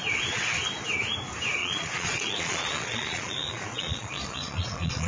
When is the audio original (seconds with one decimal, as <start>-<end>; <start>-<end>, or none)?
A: 0.0-1.6